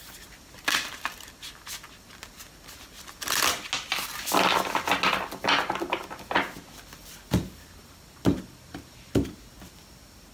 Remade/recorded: recorded